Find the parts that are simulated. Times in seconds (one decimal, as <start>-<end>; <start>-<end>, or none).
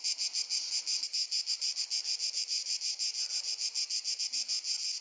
none